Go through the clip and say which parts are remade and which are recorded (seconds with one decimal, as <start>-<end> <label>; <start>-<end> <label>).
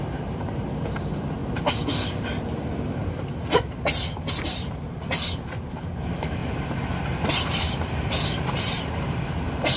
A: 0.0-1.4 remade; 1.4-2.1 recorded; 2.1-3.0 remade; 3.0-5.8 recorded; 5.8-6.4 remade; 6.4-7.3 recorded; 7.3-9.8 remade